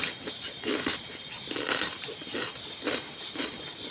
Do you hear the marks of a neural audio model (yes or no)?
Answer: no